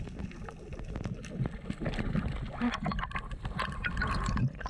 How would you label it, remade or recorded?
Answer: recorded